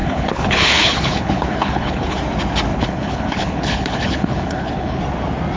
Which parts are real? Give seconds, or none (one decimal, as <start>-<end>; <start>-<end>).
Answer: 2.2-2.7; 5.0-5.6